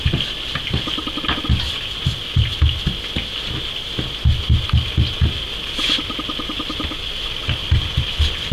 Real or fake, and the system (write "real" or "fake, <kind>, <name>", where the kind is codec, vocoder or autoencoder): real